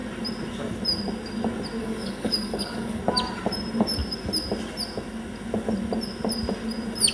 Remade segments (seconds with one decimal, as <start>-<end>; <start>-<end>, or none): 1.8-3.0